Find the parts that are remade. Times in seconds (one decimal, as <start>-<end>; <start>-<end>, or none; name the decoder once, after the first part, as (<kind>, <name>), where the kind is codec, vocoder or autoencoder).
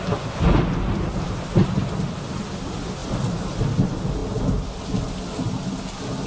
none